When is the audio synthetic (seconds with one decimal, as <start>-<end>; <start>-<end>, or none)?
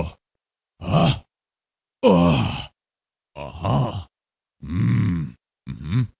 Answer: none